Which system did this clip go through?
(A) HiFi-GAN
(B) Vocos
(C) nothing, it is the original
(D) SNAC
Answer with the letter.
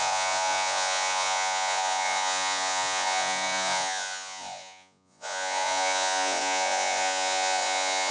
B